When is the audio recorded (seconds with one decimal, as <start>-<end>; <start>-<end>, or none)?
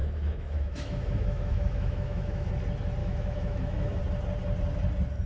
2.5-3.0; 4.0-5.3